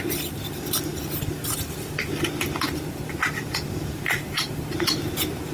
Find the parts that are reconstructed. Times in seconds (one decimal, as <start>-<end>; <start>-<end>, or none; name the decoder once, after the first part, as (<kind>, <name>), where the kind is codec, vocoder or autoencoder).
none